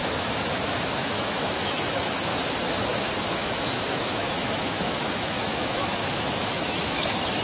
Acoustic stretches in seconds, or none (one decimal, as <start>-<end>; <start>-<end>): 2.3-3.3

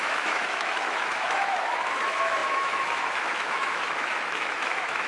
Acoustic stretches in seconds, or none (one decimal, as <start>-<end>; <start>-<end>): none

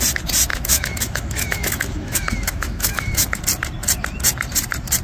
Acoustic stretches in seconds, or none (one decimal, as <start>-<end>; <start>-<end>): 0.0-0.5; 3.4-5.0

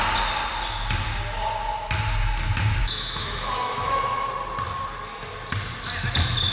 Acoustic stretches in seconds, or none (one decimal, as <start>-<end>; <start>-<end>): 0.0-2.8; 4.3-6.5

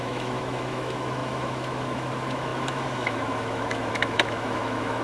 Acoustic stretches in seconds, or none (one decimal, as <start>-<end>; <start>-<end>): none

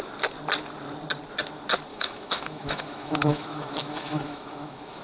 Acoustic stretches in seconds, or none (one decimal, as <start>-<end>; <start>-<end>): 0.0-1.9

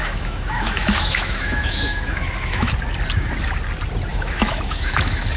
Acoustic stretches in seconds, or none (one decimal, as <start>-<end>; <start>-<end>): 2.7-4.1

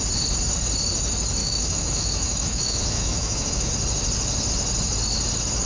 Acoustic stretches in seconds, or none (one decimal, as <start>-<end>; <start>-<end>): 0.0-1.4; 3.7-5.7